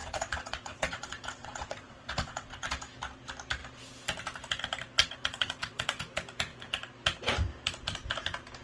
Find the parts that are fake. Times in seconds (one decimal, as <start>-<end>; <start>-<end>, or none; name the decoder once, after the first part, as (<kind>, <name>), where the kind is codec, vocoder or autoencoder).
0.0-2.8 (vocoder, WaveNeXt); 5.0-6.0